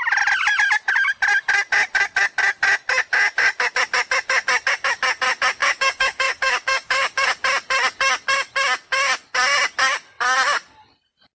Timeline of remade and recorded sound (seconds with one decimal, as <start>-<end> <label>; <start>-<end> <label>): 0.0-5.6 recorded; 5.6-7.3 remade; 7.3-11.4 recorded